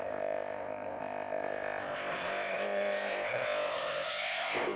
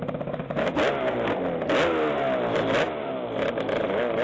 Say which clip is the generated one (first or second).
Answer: first